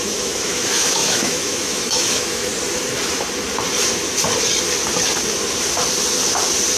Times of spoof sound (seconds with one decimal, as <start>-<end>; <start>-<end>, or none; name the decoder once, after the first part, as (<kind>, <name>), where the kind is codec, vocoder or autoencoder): 0.0-2.5 (autoencoder, DAC-VAE)